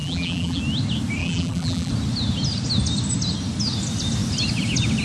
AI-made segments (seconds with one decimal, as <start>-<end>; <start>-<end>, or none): 0.0-0.6; 1.2-1.9